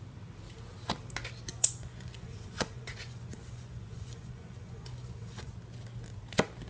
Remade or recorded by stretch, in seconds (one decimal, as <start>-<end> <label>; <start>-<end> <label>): 0.0-1.5 recorded; 1.5-5.5 remade; 5.5-6.7 recorded